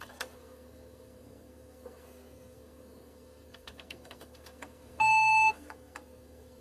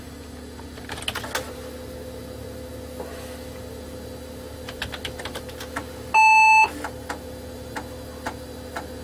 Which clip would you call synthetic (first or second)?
first